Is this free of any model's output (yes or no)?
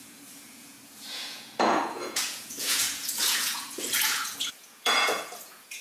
no